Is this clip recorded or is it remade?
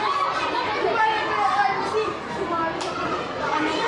recorded